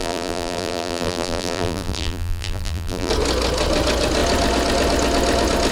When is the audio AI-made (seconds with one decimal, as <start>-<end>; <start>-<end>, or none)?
0.0-3.1